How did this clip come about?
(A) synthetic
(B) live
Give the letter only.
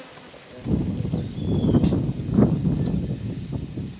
B